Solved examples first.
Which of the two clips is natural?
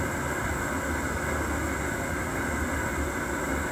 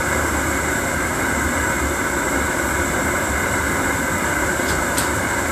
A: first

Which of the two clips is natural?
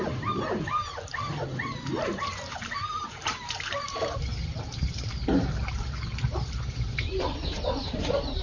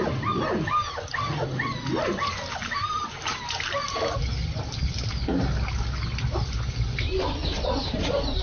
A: second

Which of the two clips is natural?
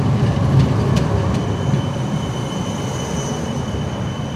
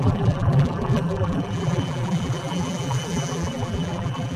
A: first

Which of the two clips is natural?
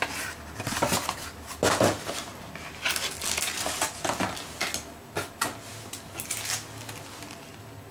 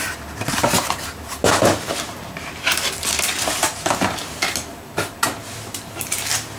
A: first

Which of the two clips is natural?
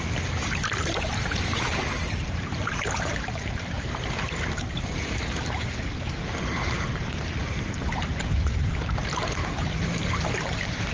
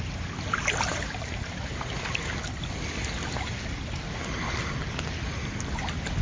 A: second